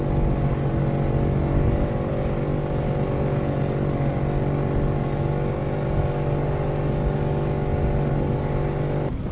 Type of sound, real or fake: real